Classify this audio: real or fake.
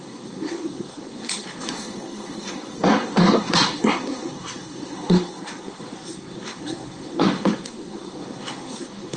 fake